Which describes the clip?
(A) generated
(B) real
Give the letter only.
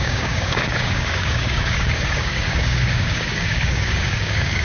A